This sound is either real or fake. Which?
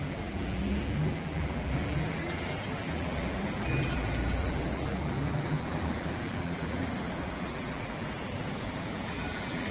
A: fake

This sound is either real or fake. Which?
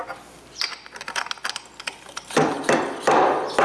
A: real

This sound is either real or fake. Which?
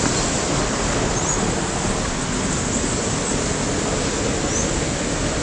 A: real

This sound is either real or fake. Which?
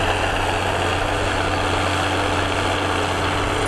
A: real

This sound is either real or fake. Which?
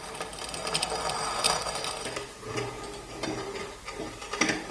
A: real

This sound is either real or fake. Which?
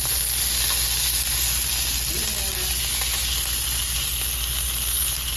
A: real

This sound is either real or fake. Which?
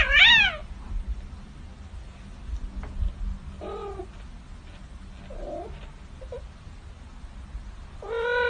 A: real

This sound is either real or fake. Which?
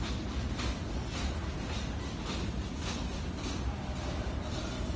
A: real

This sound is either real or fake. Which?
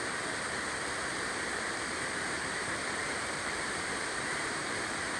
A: fake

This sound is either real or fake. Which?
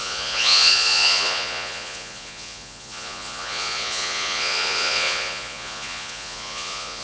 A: fake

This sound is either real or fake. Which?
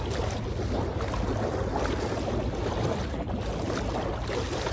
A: real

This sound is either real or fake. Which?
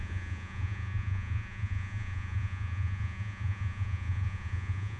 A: fake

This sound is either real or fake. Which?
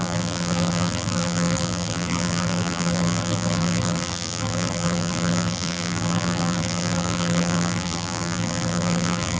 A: fake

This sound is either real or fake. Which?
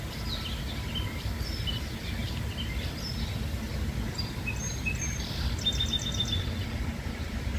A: real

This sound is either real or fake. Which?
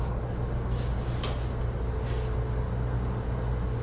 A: real